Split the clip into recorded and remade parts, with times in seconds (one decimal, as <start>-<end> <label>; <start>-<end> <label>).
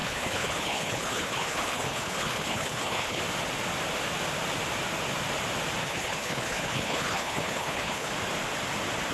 0.0-3.2 remade; 3.2-5.8 recorded; 5.8-8.1 remade; 8.1-9.1 recorded